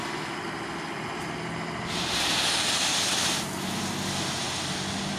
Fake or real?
real